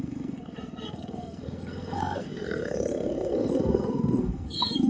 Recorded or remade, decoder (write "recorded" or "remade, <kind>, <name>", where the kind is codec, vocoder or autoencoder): remade, codec, SNAC